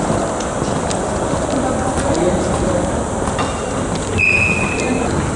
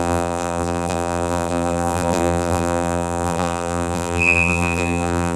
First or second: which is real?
first